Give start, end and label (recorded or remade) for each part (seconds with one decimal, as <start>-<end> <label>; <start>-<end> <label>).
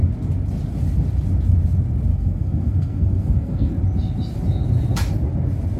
0.0-2.1 recorded; 2.1-3.7 remade; 3.7-5.8 recorded